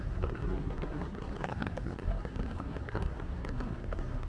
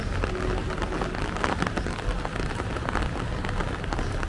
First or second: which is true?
second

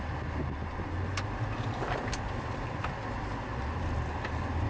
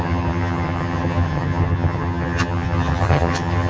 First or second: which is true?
first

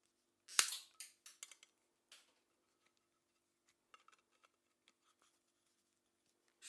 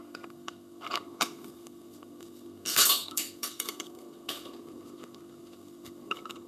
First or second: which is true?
first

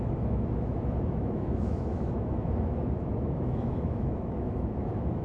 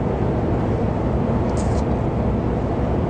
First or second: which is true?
second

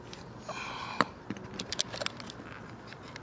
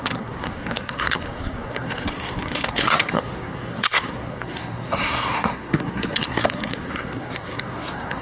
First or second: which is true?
first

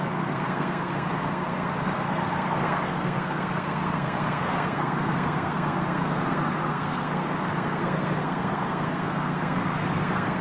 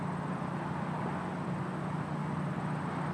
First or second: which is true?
second